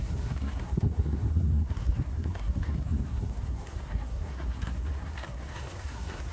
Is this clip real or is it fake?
fake